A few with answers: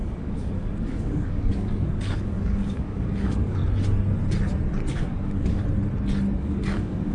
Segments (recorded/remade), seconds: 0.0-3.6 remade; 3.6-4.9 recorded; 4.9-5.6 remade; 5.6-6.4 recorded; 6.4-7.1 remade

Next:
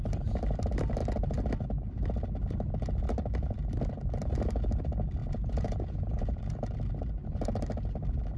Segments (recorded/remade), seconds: 0.0-5.2 recorded; 5.2-6.4 remade; 6.4-8.4 recorded

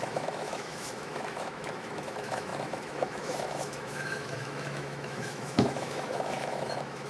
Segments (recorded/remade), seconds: 0.0-7.1 remade

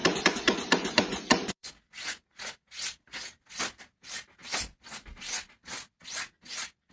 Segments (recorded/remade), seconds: 0.0-1.7 remade; 1.7-6.9 recorded

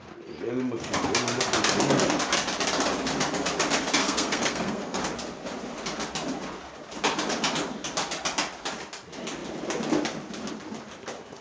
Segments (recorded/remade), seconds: 0.0-4.0 recorded; 4.0-5.0 remade; 5.0-11.4 recorded

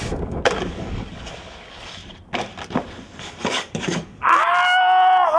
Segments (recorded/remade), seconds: 0.0-2.0 remade; 2.0-3.2 recorded; 3.2-4.5 remade; 4.5-5.4 recorded

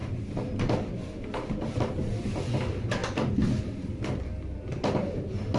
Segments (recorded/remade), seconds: 0.0-5.6 recorded

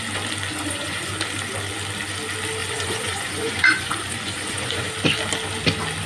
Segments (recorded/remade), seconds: 0.0-0.5 recorded; 0.5-1.1 remade; 1.1-2.6 recorded; 2.6-4.9 remade; 4.9-6.1 recorded